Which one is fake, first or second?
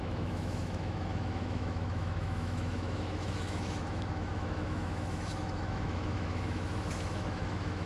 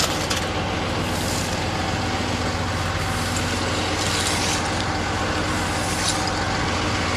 first